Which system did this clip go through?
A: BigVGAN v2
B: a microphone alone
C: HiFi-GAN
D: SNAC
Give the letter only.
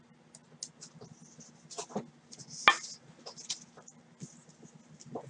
B